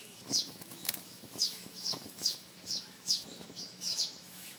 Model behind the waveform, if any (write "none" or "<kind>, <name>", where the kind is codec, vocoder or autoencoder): autoencoder, DAC-VAE